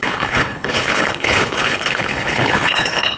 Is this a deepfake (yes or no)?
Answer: yes